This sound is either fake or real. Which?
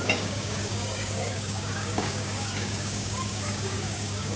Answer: fake